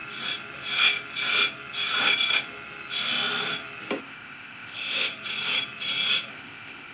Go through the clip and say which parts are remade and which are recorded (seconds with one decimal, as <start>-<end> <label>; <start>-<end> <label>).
0.0-4.0 recorded; 4.0-5.1 remade; 5.1-6.3 recorded; 6.3-6.9 remade